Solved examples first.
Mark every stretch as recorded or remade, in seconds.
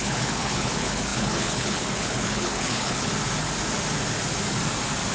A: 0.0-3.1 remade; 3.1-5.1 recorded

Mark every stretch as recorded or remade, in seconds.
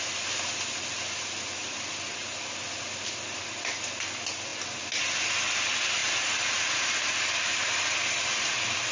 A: 0.0-8.9 recorded